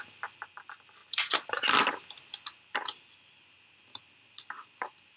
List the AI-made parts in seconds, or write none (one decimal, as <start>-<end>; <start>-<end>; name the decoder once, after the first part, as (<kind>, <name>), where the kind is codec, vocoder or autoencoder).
0.0-5.2 (vocoder, BigVGAN v2)